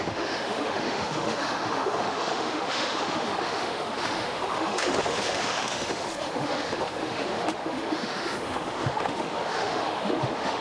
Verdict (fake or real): fake